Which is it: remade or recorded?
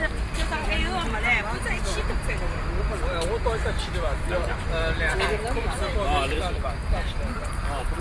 recorded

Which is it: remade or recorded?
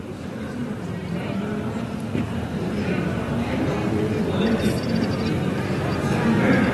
recorded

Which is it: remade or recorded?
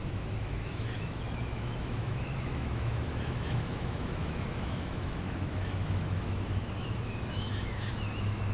remade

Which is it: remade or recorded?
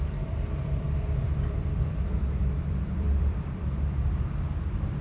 remade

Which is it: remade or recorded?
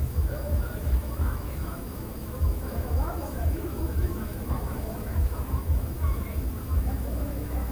remade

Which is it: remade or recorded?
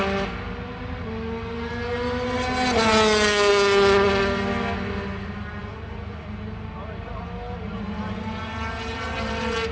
recorded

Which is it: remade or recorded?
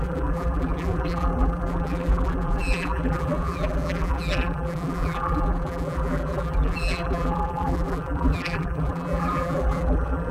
remade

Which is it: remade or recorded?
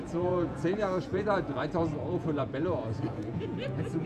remade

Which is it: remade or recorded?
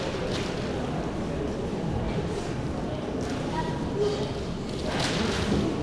recorded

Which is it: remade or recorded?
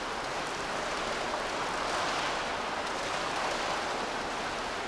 recorded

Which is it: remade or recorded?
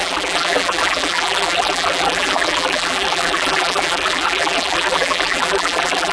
remade